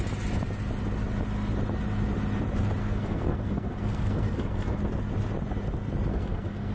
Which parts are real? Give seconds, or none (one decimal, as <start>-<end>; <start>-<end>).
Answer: 0.0-2.8; 4.8-6.1